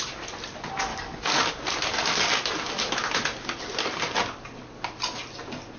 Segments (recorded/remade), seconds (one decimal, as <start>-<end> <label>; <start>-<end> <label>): 0.0-0.9 recorded; 0.9-1.5 remade; 1.5-5.8 recorded